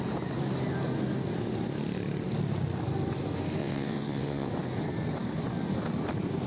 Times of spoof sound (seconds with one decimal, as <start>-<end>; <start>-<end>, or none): 3.6-4.5